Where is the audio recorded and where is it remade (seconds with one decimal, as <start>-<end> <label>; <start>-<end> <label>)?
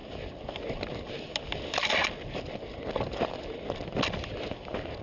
0.0-5.0 recorded